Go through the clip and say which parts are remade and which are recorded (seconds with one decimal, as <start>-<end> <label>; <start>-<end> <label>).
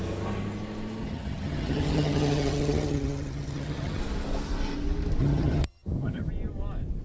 0.0-1.0 recorded; 1.0-4.0 remade; 4.0-5.2 recorded; 5.2-6.3 remade; 6.3-7.0 recorded